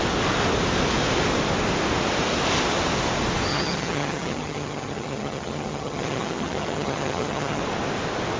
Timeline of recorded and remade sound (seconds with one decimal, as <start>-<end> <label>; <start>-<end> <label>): 0.0-3.5 recorded; 3.5-7.6 remade; 7.6-8.4 recorded